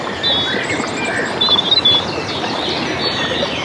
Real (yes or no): yes